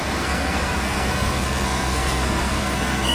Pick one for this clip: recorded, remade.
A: remade